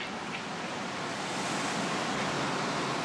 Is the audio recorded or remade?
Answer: recorded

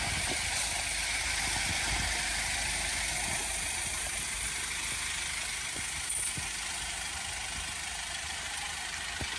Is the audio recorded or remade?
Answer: recorded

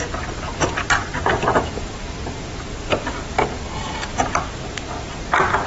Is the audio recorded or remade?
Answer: recorded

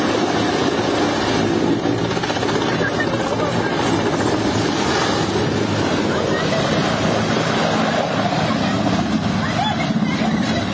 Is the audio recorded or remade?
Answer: recorded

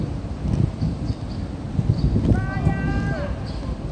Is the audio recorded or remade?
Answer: recorded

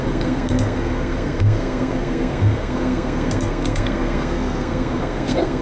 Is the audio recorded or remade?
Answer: remade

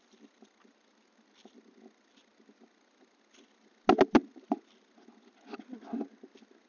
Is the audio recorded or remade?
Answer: recorded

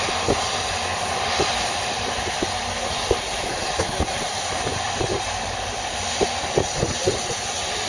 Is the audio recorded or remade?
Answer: recorded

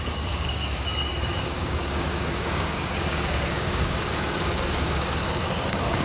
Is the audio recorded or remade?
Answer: remade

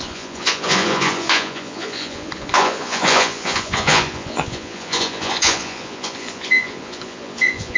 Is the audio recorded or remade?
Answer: remade